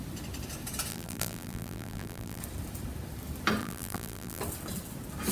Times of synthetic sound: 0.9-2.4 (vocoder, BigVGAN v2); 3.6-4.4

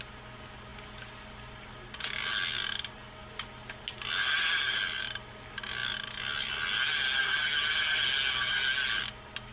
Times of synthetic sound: none